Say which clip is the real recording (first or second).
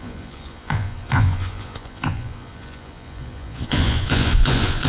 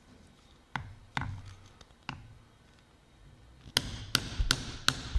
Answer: second